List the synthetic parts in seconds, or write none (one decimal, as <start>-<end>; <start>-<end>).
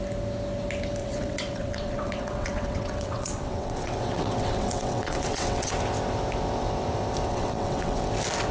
1.0-5.7; 7.3-8.0